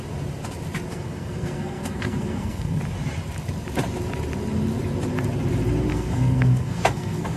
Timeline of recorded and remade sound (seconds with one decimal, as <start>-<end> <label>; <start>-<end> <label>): 0.0-0.9 recorded; 0.9-2.8 remade; 2.8-5.9 recorded; 5.9-7.4 remade